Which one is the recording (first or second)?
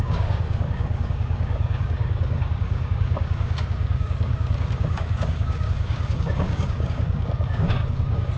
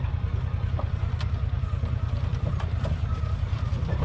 second